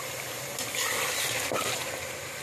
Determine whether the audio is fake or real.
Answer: real